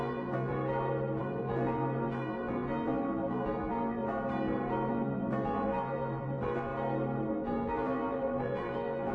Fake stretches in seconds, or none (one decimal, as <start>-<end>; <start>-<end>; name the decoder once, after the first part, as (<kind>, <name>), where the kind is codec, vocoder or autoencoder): 0.0-0.5 (vocoder, BigVGAN v2); 1.2-4.0; 4.9-6.7; 7.3-9.1